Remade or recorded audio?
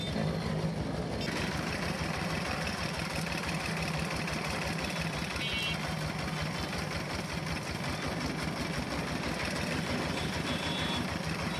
recorded